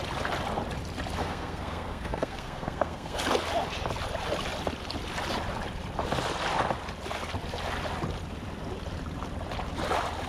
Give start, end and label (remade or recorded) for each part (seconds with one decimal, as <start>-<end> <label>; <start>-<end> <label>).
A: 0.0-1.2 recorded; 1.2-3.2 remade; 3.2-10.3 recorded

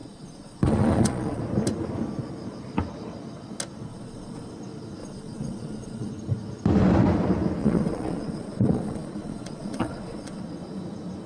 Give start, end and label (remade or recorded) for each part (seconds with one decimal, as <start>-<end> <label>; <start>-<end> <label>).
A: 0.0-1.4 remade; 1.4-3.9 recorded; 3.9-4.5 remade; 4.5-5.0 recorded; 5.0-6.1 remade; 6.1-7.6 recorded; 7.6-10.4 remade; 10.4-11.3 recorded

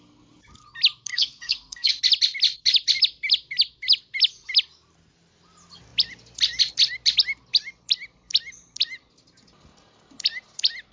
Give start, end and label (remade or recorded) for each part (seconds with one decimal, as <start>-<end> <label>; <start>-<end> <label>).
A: 0.0-1.1 recorded; 1.1-1.9 remade; 1.9-10.9 recorded

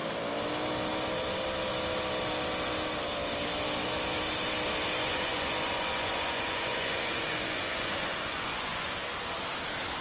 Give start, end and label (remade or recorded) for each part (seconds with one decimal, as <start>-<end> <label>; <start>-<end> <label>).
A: 0.0-5.0 recorded; 5.0-8.9 remade; 8.9-10.0 recorded

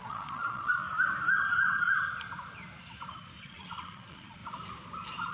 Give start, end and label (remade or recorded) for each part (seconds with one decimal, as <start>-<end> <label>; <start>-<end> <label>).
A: 0.0-0.8 remade; 0.8-3.4 recorded; 3.4-4.4 remade; 4.4-5.3 recorded